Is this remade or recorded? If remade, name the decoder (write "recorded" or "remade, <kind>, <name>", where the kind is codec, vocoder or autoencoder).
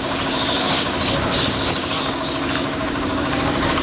remade, codec, DAC